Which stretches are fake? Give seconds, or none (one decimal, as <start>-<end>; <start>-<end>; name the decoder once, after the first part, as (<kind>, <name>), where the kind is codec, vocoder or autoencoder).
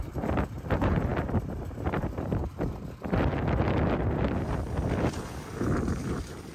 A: none